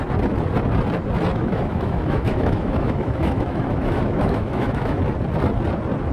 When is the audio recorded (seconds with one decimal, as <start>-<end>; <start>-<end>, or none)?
0.0-1.3; 5.0-6.1